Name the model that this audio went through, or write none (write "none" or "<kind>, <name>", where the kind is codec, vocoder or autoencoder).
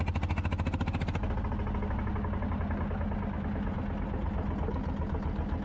none